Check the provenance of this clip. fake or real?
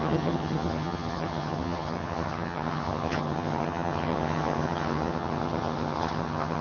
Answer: fake